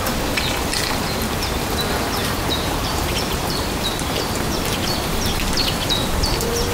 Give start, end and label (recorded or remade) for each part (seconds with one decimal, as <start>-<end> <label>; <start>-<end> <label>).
0.0-2.2 recorded; 2.2-6.2 remade; 6.2-6.7 recorded